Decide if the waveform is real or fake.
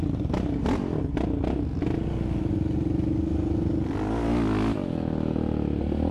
real